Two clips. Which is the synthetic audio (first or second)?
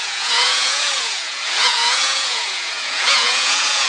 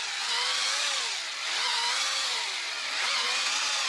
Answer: first